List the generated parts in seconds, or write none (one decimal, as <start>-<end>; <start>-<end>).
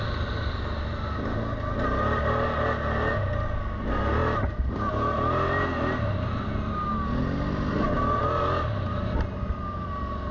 none